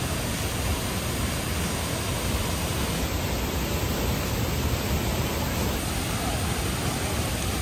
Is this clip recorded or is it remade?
recorded